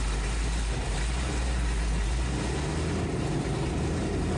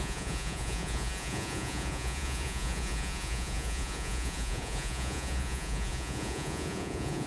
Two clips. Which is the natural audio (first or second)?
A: first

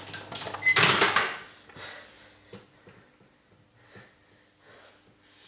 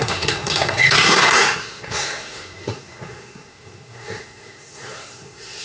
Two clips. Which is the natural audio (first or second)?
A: first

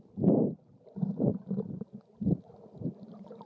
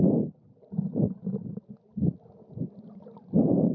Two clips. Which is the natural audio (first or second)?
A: second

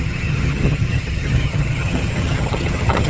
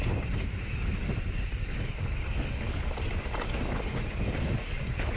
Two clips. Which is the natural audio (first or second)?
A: second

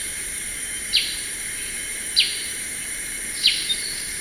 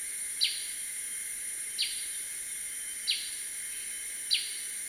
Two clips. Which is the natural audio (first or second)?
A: second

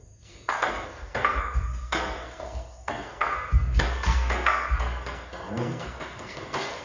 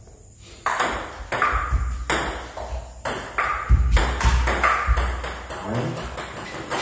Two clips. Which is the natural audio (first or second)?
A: second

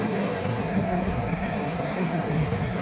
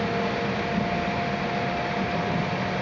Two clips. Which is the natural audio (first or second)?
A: second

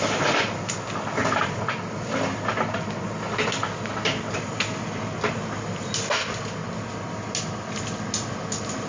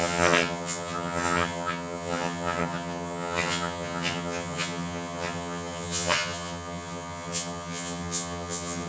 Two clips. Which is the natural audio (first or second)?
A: first